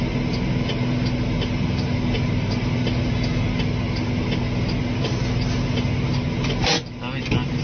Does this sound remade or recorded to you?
recorded